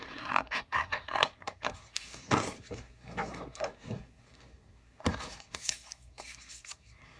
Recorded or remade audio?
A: remade